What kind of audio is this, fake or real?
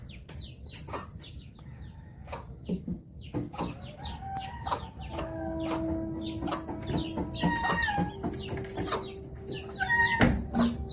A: real